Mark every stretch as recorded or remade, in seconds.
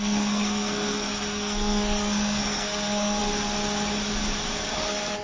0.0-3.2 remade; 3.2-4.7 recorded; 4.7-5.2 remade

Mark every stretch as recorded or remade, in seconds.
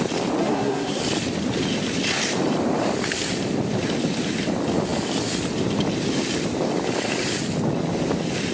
0.0-0.4 recorded; 0.4-1.0 remade; 1.0-8.5 recorded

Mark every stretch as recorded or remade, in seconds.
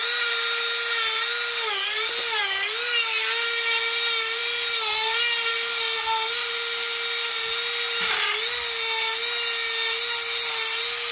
0.0-11.1 recorded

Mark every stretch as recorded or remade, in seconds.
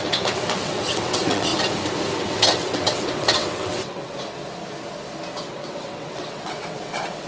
0.0-1.5 remade; 1.5-2.2 recorded; 2.2-4.1 remade; 4.1-5.4 recorded; 5.4-7.3 remade